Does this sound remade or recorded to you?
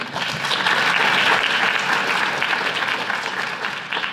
recorded